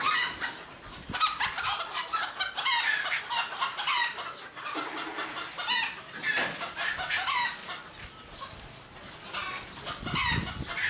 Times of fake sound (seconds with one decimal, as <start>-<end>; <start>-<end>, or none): 7.6-8.5